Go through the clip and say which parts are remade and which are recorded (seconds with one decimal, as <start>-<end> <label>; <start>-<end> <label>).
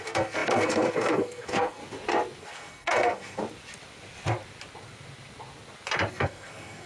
0.0-1.8 remade; 1.8-2.4 recorded; 2.4-3.4 remade; 3.4-6.1 recorded; 6.1-6.9 remade